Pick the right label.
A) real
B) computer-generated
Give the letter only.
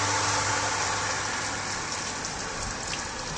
A